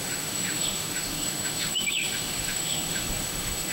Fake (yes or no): yes